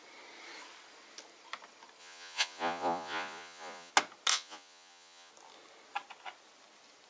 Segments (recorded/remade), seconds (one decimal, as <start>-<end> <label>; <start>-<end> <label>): 0.0-2.0 recorded; 2.0-3.9 remade; 3.9-4.3 recorded; 4.3-5.3 remade; 5.3-7.1 recorded